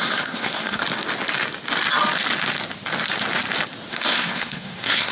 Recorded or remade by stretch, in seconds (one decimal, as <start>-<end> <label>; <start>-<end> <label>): 0.0-0.8 remade; 0.8-3.9 recorded; 3.9-5.1 remade